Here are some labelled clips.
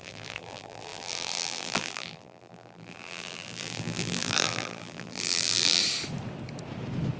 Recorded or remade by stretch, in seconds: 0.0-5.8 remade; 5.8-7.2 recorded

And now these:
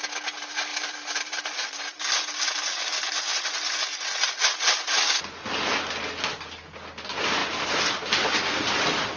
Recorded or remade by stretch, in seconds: 0.0-0.7 recorded; 0.7-2.4 remade; 2.4-7.4 recorded; 7.4-7.9 remade; 7.9-9.2 recorded

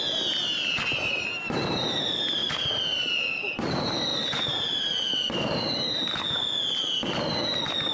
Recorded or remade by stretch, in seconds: 0.0-2.4 recorded; 2.4-3.1 remade; 3.1-4.1 recorded; 4.1-4.8 remade; 4.8-7.9 recorded